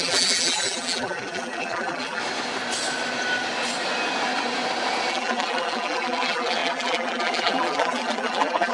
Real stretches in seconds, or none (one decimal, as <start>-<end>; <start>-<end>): 2.2-5.1